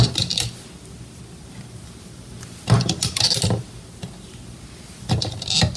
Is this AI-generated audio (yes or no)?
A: no